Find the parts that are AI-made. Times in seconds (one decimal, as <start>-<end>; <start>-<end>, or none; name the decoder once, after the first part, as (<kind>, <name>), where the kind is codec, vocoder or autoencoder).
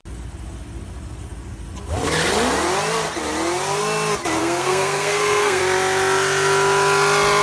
4.4-5.6 (codec, SNAC)